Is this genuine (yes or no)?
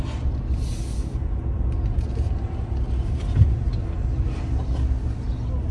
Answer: yes